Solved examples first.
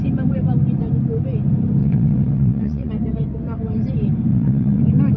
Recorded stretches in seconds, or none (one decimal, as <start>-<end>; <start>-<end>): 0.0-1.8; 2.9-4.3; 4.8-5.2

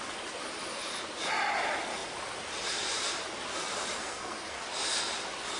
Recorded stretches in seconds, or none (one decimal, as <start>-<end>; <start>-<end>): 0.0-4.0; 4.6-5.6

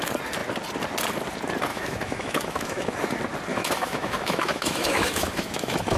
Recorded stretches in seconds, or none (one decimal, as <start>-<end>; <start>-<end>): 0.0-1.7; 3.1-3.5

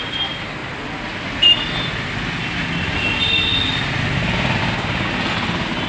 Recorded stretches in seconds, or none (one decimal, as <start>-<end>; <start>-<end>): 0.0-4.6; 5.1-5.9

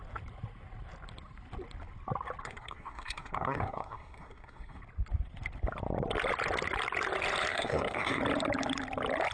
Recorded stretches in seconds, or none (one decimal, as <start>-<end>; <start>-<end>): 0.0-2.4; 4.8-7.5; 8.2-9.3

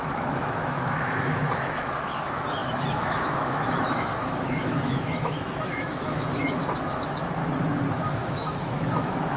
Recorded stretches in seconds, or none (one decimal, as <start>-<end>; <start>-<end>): 7.4-7.9